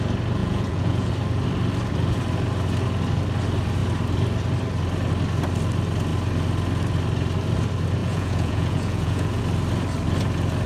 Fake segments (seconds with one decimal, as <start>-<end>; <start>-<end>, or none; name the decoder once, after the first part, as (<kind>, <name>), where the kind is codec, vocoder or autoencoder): 0.4-1.1 (vocoder, Vocos); 8.0-9.4